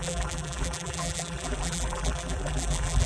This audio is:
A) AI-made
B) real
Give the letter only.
A